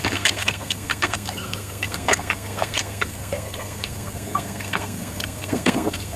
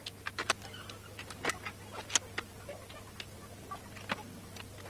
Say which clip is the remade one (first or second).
first